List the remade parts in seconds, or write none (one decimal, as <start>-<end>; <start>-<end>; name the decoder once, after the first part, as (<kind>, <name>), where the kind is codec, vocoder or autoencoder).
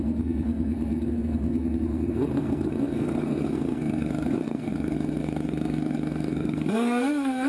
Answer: 0.0-7.5 (codec, SNAC)